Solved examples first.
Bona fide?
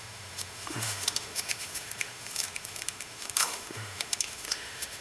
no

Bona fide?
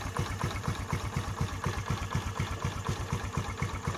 yes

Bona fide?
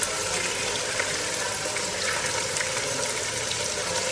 yes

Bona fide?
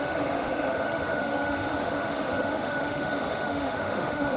no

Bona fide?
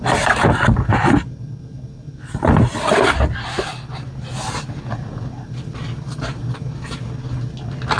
yes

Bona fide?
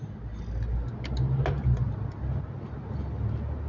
yes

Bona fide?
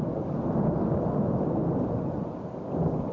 yes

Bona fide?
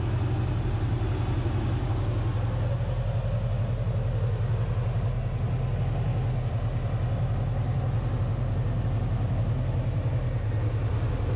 yes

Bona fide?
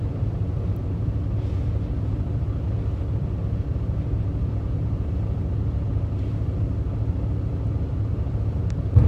yes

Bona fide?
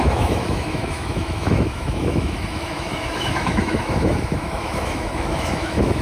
no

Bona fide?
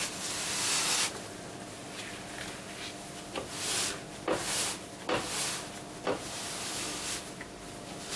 yes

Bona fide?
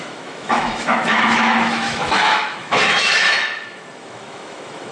no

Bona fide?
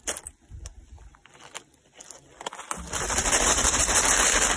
yes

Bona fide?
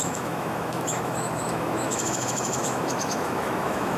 no